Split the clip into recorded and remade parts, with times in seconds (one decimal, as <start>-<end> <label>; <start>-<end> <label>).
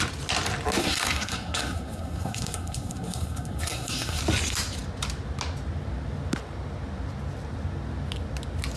0.0-0.8 recorded; 0.8-4.2 remade; 4.2-8.8 recorded